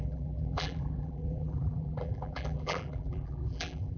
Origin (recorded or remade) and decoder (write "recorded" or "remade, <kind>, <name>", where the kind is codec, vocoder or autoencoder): remade, vocoder, BigVGAN v2